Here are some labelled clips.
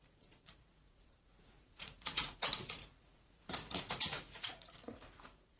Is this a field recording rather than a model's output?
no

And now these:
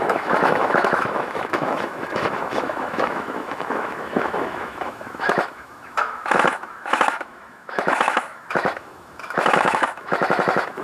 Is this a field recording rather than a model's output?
no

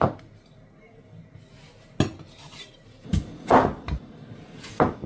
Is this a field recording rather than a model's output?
yes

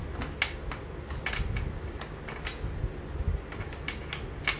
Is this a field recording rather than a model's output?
yes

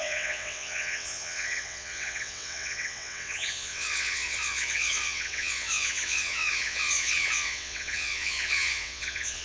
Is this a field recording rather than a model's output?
no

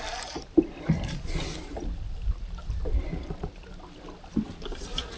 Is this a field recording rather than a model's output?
yes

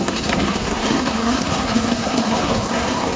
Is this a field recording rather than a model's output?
no